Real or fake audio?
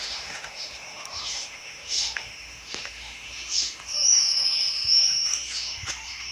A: fake